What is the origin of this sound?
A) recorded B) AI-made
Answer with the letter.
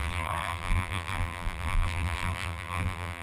B